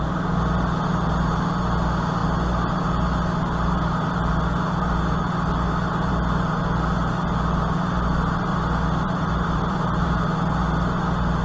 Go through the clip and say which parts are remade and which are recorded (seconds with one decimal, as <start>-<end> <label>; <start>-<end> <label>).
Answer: 0.0-8.5 recorded; 8.5-10.2 remade; 10.2-11.4 recorded